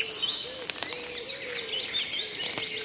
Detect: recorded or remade recorded